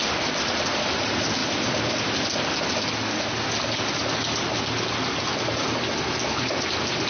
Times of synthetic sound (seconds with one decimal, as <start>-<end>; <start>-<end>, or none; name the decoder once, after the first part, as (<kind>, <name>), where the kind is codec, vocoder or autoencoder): 1.4-2.7 (vocoder, BigVGAN v2)